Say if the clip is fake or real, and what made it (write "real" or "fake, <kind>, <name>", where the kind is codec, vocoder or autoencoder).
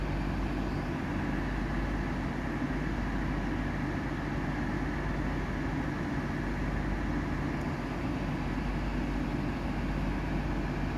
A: real